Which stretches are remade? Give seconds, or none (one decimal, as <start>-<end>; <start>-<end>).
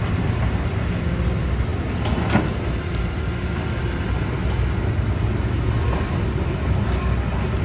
none